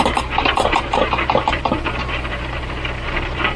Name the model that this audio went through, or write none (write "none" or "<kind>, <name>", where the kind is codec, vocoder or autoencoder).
vocoder, BigVGAN v2